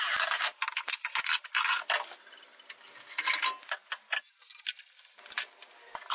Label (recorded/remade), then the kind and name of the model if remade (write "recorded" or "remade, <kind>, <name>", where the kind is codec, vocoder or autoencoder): recorded